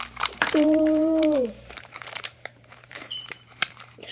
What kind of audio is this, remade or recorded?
remade